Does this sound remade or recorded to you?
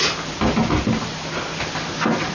recorded